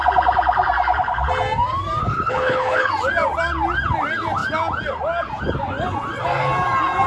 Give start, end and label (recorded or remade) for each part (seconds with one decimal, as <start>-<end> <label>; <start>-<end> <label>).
0.0-2.0 recorded; 2.0-2.9 remade; 2.9-7.1 recorded